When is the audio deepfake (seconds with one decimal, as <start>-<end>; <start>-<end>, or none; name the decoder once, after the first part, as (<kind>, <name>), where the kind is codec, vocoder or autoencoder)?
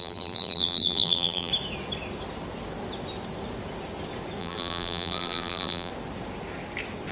0.0-1.5 (vocoder, BigVGAN v2); 4.4-5.9